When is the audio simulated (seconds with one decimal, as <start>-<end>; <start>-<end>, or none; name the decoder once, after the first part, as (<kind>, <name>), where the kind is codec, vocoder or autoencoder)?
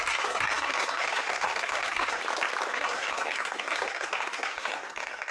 0.0-2.2 (codec, SNAC); 2.7-5.3